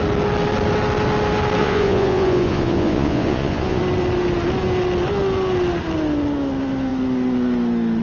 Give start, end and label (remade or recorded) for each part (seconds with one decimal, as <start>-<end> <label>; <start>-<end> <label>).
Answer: 0.0-1.6 recorded; 1.6-3.8 remade; 3.8-8.0 recorded